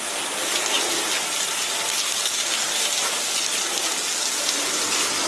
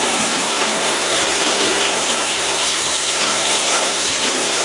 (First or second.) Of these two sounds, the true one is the first